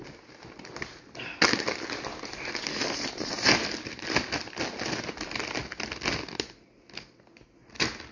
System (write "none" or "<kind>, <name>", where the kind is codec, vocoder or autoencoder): none